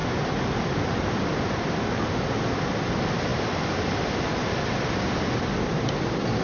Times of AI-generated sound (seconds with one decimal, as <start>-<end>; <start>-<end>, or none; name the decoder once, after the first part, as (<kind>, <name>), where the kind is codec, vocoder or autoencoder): 0.0-1.7 (vocoder, BigVGAN v2); 3.3-5.7